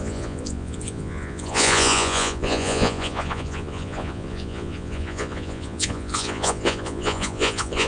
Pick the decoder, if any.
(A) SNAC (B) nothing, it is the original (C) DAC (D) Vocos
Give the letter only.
D